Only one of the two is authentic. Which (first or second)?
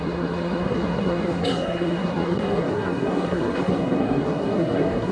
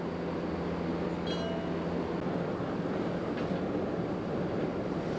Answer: second